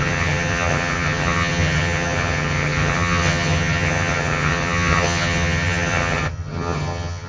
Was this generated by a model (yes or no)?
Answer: yes